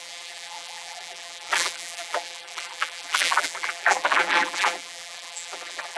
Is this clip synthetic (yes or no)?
yes